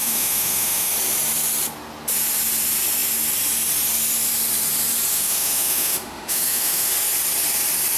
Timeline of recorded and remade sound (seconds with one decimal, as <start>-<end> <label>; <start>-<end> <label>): 0.0-0.9 remade; 0.9-5.1 recorded; 5.1-6.9 remade; 6.9-8.0 recorded